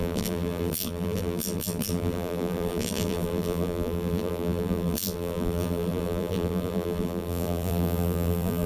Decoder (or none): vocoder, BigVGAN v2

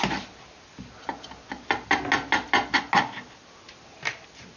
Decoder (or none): none